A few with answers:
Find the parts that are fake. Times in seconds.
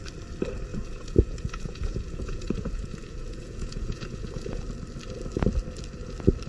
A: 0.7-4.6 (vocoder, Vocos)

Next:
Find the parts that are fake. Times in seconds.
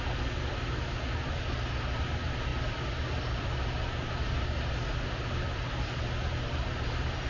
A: none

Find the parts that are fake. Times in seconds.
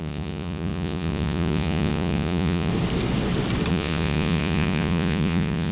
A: 0.0-2.7 (vocoder, Vocos); 3.7-5.7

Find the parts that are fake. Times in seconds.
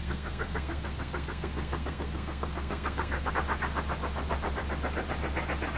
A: 0.0-3.3 (codec, SNAC)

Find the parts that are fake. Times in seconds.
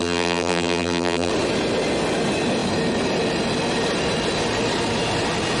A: 0.0-1.3 (vocoder, BigVGAN v2)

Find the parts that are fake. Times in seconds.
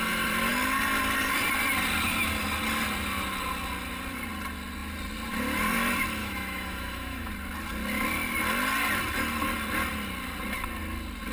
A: 6.2-7.3 (autoencoder, DAC-VAE)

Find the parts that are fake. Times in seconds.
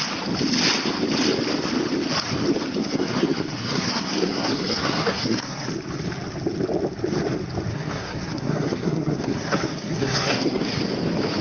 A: 2.8-5.7 (codec, SNAC); 7.7-10.8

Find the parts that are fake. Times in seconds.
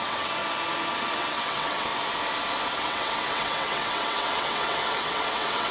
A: 0.0-0.4 (vocoder, WaveNeXt); 1.1-1.9; 2.7-5.7